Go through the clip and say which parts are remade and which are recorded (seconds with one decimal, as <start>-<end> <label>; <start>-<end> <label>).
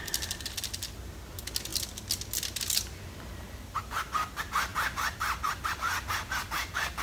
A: 0.0-7.0 recorded